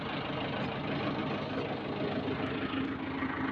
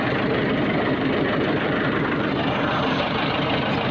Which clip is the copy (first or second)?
second